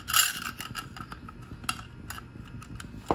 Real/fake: real